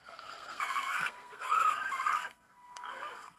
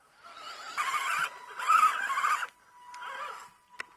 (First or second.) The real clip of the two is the second